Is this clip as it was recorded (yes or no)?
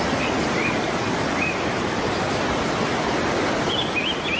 yes